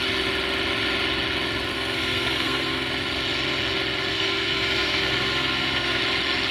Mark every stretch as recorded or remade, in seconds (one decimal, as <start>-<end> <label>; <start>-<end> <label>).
0.0-1.7 recorded; 1.7-2.9 remade; 2.9-4.1 recorded; 4.1-6.0 remade; 6.0-6.5 recorded